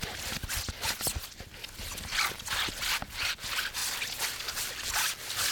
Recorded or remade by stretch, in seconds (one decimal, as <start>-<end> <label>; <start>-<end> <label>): 0.0-5.5 recorded